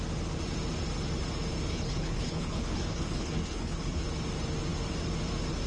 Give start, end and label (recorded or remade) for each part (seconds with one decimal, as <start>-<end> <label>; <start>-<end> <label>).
0.0-1.7 recorded; 1.7-4.0 remade; 4.0-5.7 recorded